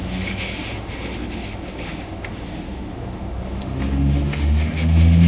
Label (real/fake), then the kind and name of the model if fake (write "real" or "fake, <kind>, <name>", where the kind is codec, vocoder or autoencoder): fake, autoencoder, DAC-VAE